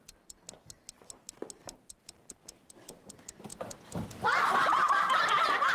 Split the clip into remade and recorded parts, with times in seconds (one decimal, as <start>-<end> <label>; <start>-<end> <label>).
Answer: 0.0-5.7 recorded

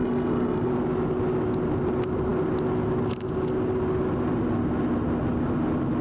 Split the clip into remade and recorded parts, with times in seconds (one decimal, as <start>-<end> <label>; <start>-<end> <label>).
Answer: 0.0-0.7 remade; 0.7-6.0 recorded

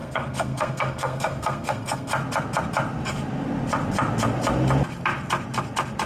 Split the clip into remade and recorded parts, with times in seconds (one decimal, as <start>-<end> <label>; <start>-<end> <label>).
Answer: 0.0-2.1 remade; 2.1-6.1 recorded

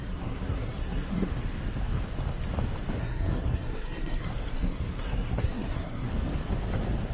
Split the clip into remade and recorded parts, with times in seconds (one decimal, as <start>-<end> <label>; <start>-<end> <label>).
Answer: 0.0-1.3 remade; 1.3-3.0 recorded; 3.0-6.1 remade; 6.1-7.1 recorded

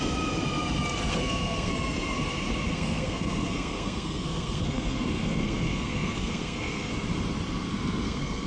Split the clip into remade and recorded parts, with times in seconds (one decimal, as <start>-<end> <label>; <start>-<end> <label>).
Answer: 0.0-1.1 recorded; 1.1-1.7 remade; 1.7-2.7 recorded; 2.7-6.9 remade; 6.9-7.7 recorded; 7.7-8.5 remade

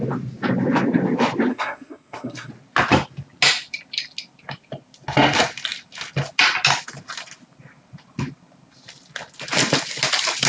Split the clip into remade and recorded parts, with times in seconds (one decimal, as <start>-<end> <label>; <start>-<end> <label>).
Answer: 0.0-1.5 recorded; 1.5-2.5 remade; 2.5-10.5 recorded